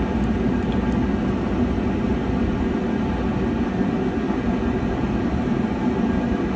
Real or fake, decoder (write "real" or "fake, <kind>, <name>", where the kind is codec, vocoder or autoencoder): real